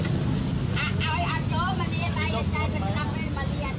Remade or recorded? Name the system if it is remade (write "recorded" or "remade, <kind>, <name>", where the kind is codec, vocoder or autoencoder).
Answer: recorded